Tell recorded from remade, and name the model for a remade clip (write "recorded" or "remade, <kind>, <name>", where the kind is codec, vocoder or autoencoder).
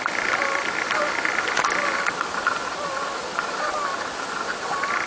recorded